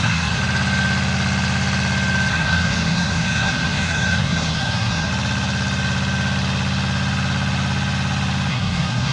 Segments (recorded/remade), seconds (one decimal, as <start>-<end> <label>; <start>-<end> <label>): 0.0-0.4 remade; 0.4-2.3 recorded; 2.3-5.1 remade; 5.1-8.5 recorded; 8.5-9.1 remade